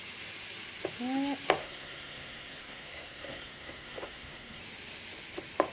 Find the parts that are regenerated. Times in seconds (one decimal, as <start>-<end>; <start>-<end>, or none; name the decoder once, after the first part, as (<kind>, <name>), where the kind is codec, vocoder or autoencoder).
1.6-4.6 (codec, SNAC)